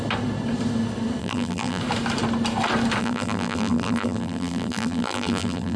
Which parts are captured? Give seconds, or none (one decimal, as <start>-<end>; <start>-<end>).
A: 0.0-1.2; 1.8-3.0